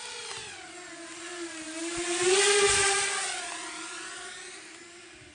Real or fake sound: real